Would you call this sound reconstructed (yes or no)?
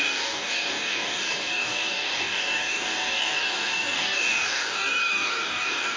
yes